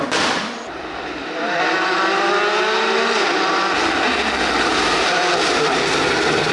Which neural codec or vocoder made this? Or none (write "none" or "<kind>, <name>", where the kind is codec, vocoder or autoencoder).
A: none